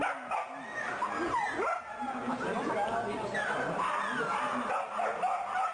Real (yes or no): yes